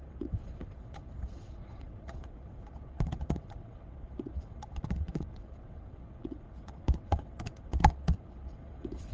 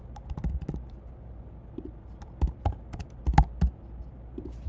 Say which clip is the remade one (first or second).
first